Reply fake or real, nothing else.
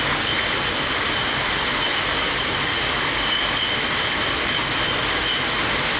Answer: real